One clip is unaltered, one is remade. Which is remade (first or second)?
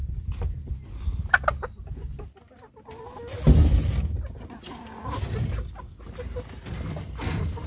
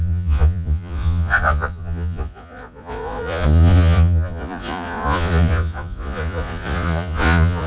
second